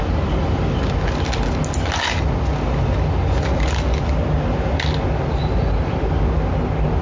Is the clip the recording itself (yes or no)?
yes